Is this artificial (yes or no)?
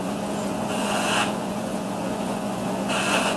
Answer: yes